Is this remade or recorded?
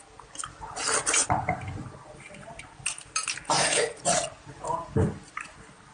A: recorded